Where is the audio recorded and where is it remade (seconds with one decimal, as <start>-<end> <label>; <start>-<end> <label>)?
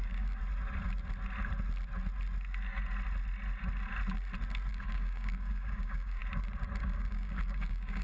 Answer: 0.0-0.4 remade; 0.4-4.7 recorded; 4.7-6.2 remade; 6.2-6.8 recorded; 6.8-8.0 remade